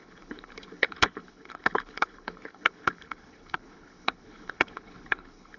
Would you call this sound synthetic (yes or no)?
yes